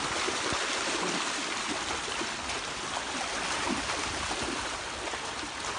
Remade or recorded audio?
recorded